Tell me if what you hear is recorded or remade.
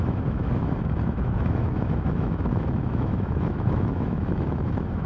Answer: remade